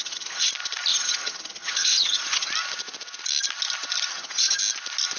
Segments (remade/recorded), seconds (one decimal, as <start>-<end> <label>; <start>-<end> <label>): 0.0-0.5 remade; 0.5-0.9 recorded; 0.9-2.5 remade; 2.5-4.1 recorded; 4.1-4.6 remade; 4.6-5.2 recorded